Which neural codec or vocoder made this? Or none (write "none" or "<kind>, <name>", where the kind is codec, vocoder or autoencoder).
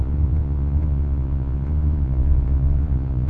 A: vocoder, Vocos